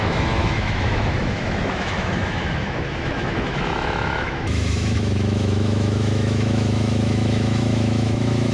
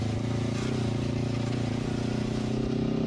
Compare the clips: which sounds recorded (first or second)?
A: second